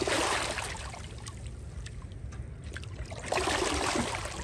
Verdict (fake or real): real